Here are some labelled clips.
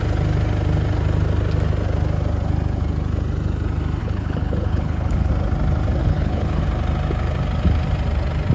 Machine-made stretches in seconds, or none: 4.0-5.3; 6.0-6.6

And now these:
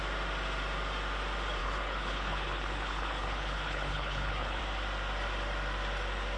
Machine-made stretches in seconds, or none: 1.6-4.6

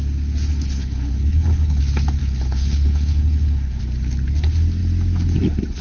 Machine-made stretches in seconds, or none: 0.5-1.8; 2.2-3.8

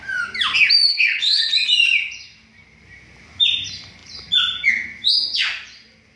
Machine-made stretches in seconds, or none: 0.9-1.4

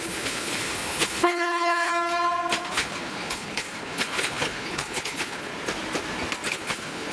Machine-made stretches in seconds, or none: 0.0-1.9; 2.7-5.5; 6.5-7.1

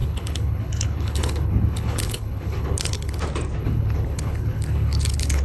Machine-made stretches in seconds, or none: 0.0-3.2; 3.6-5.4